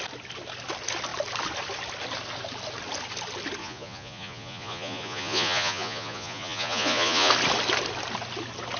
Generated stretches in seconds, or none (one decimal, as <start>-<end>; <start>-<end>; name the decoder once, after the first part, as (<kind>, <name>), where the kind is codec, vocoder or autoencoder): 3.6-7.3 (vocoder, Vocos)